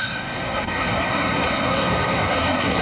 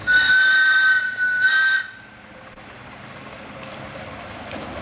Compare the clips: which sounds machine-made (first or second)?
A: first